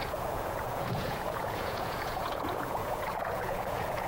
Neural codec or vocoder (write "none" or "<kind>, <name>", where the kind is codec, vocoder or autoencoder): vocoder, Vocos